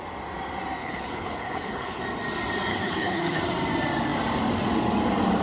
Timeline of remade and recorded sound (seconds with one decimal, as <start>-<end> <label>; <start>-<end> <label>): 0.0-0.8 recorded; 0.8-2.0 remade; 2.0-2.7 recorded; 2.7-3.4 remade; 3.4-5.4 recorded